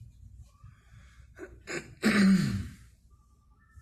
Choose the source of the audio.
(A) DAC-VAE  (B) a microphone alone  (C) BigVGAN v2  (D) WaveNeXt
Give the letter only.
C